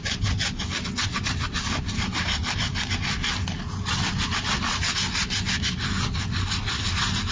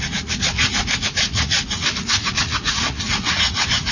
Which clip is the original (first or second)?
first